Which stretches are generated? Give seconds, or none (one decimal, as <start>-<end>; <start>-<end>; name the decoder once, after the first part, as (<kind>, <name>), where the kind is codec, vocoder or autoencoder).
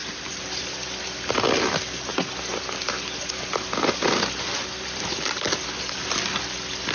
none